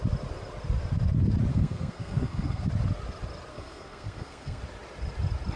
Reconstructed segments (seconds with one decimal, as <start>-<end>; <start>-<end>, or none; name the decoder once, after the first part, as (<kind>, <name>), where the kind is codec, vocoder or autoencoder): 1.5-2.7 (codec, SNAC); 3.5-4.6

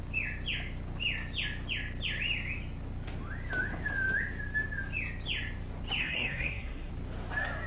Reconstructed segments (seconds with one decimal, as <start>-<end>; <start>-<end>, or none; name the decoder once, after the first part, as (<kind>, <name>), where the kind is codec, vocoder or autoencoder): 6.0-6.9 (codec, SNAC)

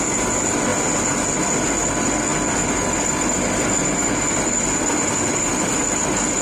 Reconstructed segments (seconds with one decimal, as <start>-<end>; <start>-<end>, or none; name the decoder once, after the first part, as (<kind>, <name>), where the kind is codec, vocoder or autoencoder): none